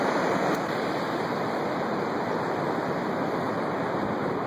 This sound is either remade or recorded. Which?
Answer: remade